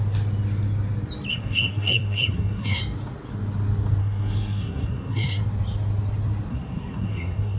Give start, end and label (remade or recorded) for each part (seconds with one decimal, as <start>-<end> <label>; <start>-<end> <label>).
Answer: 0.0-1.3 recorded; 1.3-2.8 remade; 2.8-4.0 recorded; 4.0-5.4 remade; 5.4-6.5 recorded; 6.5-7.6 remade

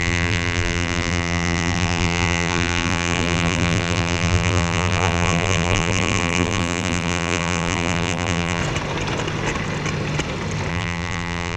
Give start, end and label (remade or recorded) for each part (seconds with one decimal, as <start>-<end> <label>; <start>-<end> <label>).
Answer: 0.0-8.6 remade; 8.6-10.7 recorded; 10.7-11.6 remade

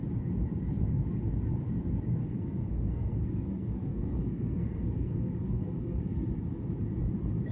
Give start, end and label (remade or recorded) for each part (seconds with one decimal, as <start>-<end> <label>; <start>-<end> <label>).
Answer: 0.0-2.2 recorded; 2.2-6.3 remade; 6.3-7.5 recorded

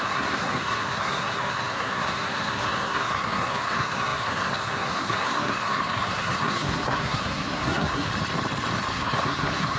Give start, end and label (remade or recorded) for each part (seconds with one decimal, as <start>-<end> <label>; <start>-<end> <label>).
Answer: 0.0-8.1 remade; 8.1-8.9 recorded; 8.9-9.8 remade

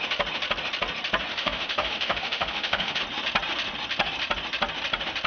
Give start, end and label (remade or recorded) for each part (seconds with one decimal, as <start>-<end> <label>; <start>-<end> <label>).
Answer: 0.0-1.3 recorded; 1.3-3.0 remade; 3.0-5.3 recorded

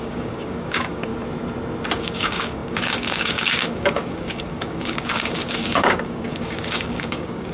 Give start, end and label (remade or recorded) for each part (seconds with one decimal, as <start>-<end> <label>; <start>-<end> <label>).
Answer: 0.0-1.1 remade; 1.1-2.0 recorded; 2.0-7.5 remade

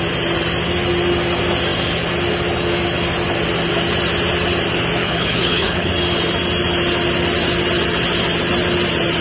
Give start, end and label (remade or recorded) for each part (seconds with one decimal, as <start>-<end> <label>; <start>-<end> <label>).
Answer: 0.0-5.0 recorded; 5.0-5.9 remade; 5.9-9.2 recorded

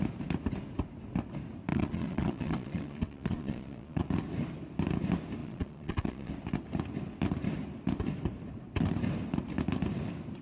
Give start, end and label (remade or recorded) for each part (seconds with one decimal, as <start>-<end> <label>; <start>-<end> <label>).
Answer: 0.0-1.7 recorded; 1.7-4.1 remade; 4.1-5.4 recorded; 5.4-6.3 remade; 6.3-10.4 recorded